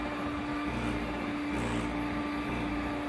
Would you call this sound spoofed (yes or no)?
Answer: no